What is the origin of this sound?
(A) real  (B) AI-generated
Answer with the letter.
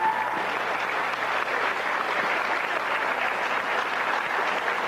A